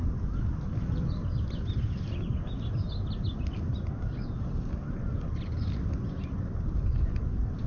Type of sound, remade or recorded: recorded